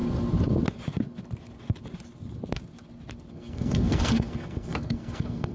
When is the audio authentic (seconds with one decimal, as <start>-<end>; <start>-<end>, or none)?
0.0-3.3